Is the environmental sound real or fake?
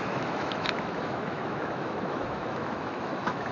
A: fake